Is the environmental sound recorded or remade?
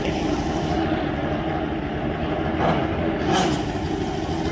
recorded